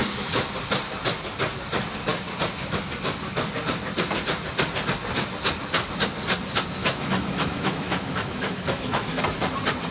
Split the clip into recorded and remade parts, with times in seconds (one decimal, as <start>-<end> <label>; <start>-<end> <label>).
0.0-6.8 recorded; 6.8-9.2 remade; 9.2-9.9 recorded